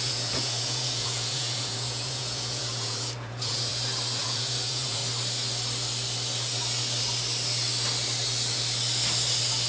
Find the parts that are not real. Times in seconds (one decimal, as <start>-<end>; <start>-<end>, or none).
0.0-3.7; 4.2-5.0